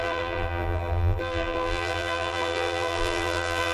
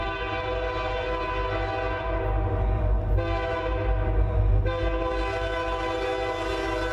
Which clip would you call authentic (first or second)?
second